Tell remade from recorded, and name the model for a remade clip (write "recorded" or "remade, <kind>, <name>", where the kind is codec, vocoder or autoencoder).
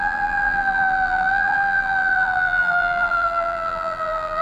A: remade, vocoder, BigVGAN v2